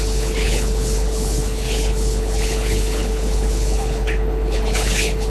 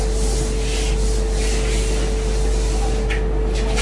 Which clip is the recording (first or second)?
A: second